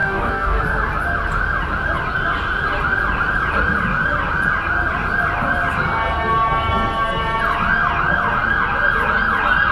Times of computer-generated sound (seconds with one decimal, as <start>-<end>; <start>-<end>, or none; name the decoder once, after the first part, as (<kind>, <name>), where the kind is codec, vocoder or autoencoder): 0.0-0.6 (codec, DAC)